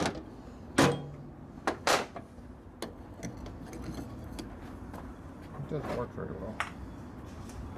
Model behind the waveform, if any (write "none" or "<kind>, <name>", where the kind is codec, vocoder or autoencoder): none